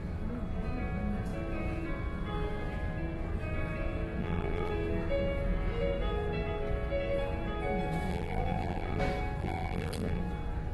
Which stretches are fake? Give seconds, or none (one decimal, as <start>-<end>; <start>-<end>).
4.2-4.7; 8.1-9.0; 9.4-10.2